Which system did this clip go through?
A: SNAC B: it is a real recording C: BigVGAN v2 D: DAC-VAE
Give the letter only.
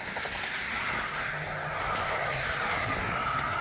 B